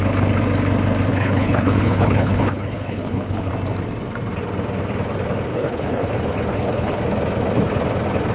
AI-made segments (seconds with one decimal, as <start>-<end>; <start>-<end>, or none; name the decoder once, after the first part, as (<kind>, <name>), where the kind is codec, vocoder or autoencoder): 1.1-3.5 (codec, HILCodec); 5.5-6.1; 6.5-7.0